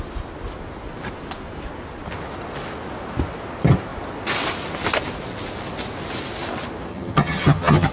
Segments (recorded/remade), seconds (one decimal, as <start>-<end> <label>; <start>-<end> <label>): 0.0-6.9 recorded; 6.9-7.9 remade